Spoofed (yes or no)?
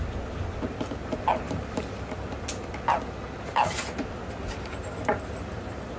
no